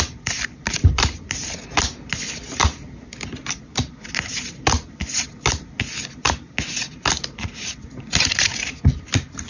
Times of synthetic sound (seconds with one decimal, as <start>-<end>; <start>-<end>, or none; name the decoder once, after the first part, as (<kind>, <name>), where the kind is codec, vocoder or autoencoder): none